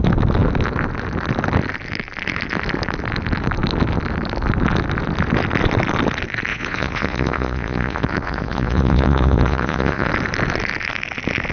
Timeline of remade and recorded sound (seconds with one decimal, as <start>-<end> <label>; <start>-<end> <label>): 0.0-6.5 recorded; 6.5-10.1 remade; 10.1-11.5 recorded

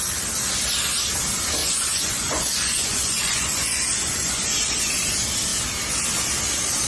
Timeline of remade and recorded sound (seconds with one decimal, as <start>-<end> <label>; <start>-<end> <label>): 0.0-1.6 recorded; 1.6-4.9 remade; 4.9-6.9 recorded

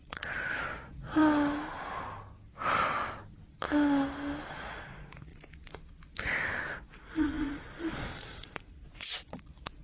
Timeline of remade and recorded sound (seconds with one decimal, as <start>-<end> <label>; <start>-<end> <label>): 0.0-1.2 remade; 1.2-4.5 recorded; 4.5-5.3 remade; 5.3-6.7 recorded; 6.7-9.8 remade

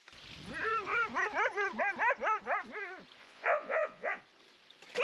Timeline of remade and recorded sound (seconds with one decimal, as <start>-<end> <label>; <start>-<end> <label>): 0.0-3.2 recorded; 3.2-4.2 remade; 4.2-5.0 recorded